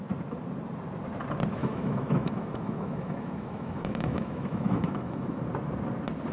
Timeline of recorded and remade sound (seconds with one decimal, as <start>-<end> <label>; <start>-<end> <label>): 0.0-1.6 recorded; 1.6-5.4 remade; 5.4-6.3 recorded